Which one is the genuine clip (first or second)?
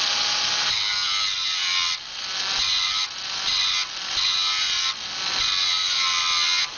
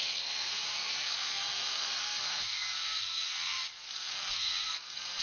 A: first